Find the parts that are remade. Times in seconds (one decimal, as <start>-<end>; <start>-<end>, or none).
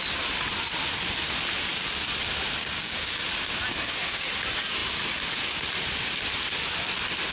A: 2.6-3.2; 3.7-4.3